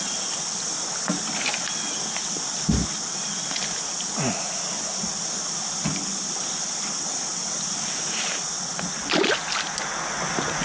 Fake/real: real